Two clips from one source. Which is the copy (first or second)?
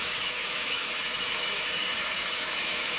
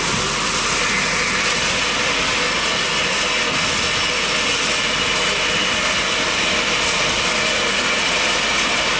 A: first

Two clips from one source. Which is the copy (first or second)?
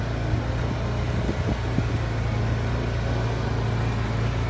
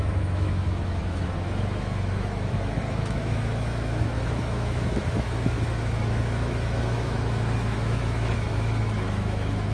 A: second